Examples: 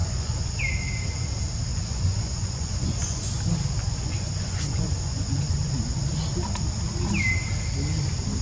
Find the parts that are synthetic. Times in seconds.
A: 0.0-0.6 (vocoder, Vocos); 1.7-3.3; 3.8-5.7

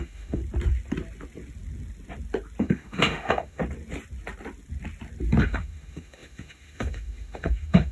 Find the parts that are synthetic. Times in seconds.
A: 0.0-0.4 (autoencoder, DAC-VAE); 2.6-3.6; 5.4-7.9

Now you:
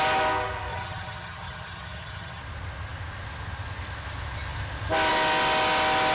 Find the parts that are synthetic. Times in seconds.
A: 0.7-2.4 (vocoder, HiFi-GAN)

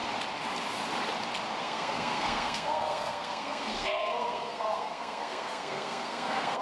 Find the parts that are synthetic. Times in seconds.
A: 1.6-6.6 (codec, SNAC)

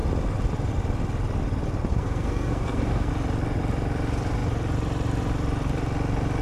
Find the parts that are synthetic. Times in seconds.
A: 1.9-3.1 (codec, SNAC)